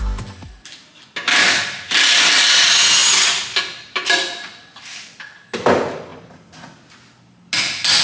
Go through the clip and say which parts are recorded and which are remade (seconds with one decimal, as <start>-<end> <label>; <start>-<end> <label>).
0.0-8.0 recorded

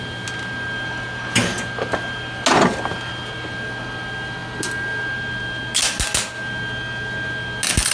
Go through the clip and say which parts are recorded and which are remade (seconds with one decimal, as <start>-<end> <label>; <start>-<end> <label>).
0.0-7.9 recorded

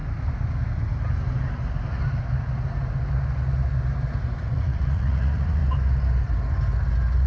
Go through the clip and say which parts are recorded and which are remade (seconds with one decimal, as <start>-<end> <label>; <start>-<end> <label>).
0.0-4.4 recorded; 4.4-5.6 remade; 5.6-7.3 recorded

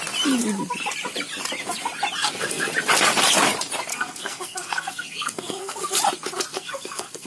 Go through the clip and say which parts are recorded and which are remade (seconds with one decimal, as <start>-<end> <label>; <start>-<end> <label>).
0.0-2.2 recorded; 2.2-2.7 remade; 2.7-3.9 recorded; 3.9-6.0 remade; 6.0-6.5 recorded; 6.5-7.3 remade

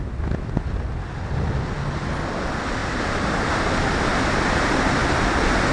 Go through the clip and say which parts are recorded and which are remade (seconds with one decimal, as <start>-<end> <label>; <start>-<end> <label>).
0.0-2.8 recorded; 2.8-3.6 remade; 3.6-4.1 recorded; 4.1-5.1 remade; 5.1-5.7 recorded